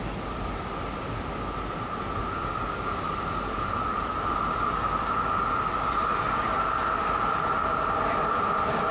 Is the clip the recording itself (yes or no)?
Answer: no